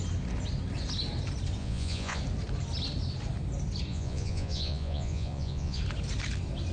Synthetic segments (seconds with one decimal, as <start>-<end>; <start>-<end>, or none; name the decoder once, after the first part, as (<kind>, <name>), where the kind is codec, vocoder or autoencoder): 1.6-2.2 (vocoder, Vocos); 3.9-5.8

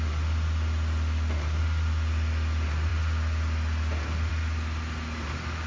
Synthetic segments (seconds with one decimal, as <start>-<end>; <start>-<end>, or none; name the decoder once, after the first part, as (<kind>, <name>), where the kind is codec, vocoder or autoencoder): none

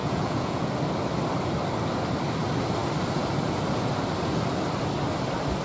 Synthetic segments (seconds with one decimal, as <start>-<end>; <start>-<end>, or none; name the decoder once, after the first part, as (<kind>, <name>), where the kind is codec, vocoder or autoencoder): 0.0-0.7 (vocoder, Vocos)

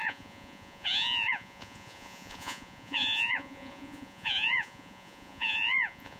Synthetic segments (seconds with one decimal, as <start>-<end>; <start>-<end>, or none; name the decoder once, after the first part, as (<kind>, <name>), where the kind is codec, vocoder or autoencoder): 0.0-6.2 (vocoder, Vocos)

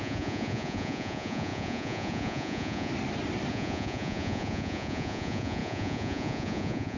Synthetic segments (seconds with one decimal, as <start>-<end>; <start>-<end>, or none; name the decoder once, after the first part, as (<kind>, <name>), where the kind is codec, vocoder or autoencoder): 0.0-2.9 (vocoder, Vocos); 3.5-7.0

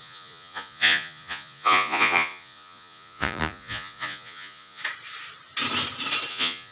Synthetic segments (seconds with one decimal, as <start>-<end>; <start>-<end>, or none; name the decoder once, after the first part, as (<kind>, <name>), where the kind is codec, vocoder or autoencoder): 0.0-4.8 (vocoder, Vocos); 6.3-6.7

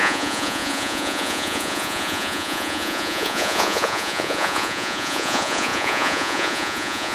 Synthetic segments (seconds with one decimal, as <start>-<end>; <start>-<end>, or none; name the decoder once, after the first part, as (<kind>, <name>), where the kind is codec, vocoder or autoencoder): 0.0-7.1 (vocoder, Vocos)